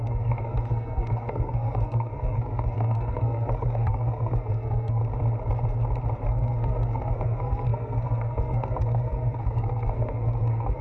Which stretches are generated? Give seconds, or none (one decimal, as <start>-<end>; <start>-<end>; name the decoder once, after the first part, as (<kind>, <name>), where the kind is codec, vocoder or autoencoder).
0.0-5.0 (codec, SNAC); 6.3-10.8